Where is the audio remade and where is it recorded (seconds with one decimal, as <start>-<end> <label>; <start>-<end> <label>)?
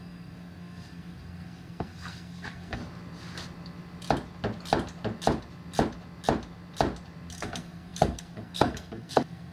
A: 0.0-2.8 remade; 2.8-7.3 recorded; 7.3-9.5 remade